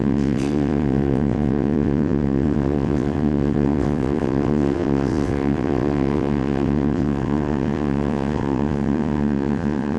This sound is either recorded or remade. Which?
remade